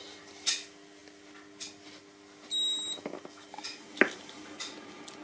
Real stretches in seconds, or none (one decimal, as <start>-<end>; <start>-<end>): 0.0-5.2